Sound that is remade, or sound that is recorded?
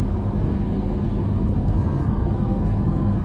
remade